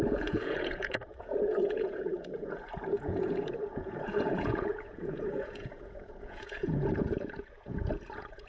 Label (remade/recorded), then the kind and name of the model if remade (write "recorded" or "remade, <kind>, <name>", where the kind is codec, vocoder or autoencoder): remade, vocoder, Vocos